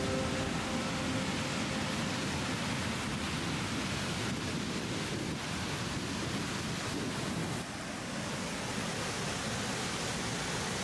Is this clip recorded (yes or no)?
yes